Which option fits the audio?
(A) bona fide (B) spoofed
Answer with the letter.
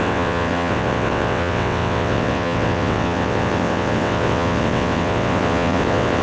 B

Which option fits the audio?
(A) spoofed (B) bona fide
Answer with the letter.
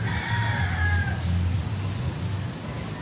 B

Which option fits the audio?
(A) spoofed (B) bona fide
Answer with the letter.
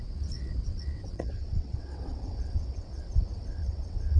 A